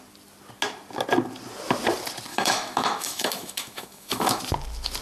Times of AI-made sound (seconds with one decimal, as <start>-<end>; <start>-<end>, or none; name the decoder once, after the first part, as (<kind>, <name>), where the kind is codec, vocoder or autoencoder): 2.3-4.4 (autoencoder, DAC-VAE)